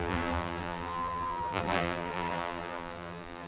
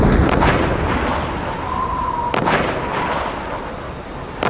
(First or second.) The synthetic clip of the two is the first